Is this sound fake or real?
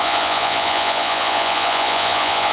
fake